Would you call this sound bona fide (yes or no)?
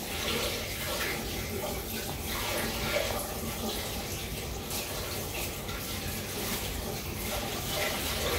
yes